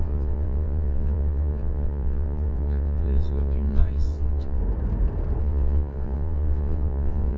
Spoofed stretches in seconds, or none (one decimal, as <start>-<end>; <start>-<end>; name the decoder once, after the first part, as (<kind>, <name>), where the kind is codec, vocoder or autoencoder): 0.0-4.6 (vocoder, WaveNeXt); 5.4-7.4